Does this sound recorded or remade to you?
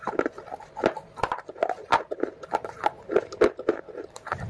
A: recorded